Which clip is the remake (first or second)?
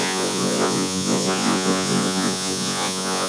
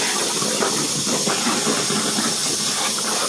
first